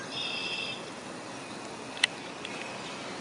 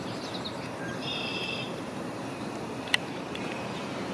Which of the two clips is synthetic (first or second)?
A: second